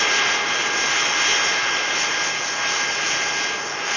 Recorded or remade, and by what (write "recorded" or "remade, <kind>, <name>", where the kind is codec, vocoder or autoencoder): recorded